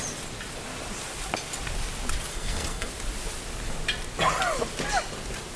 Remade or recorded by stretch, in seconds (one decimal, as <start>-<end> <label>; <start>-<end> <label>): 0.0-2.3 recorded; 2.3-2.9 remade; 2.9-5.6 recorded